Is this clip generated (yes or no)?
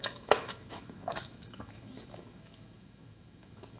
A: yes